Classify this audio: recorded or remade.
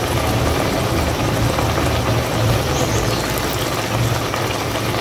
recorded